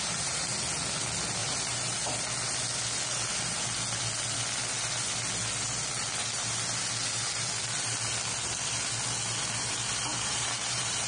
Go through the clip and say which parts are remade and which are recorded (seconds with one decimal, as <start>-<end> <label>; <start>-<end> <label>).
0.0-1.4 recorded; 1.4-2.1 remade; 2.1-10.1 recorded; 10.1-11.1 remade